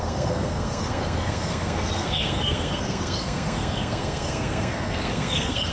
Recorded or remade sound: remade